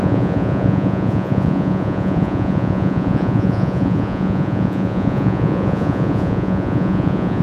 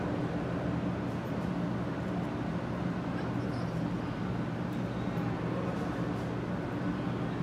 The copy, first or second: first